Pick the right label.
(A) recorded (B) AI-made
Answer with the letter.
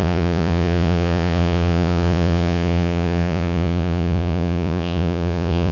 B